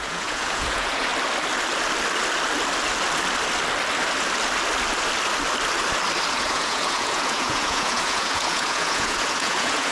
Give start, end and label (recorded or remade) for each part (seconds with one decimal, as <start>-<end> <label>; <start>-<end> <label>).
0.0-1.1 remade; 1.1-6.3 recorded; 6.3-9.9 remade